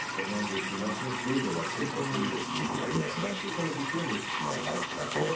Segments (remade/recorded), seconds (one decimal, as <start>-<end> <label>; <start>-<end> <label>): 0.0-2.4 recorded; 2.4-3.5 remade; 3.5-4.3 recorded; 4.3-5.3 remade